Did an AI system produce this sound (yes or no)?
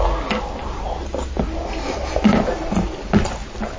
no